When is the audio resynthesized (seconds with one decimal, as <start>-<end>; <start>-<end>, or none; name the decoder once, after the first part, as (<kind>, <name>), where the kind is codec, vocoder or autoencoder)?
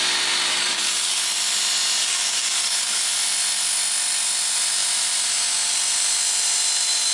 0.5-1.2 (codec, DAC); 2.0-3.0